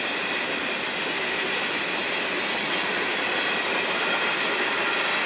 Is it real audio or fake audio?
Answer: real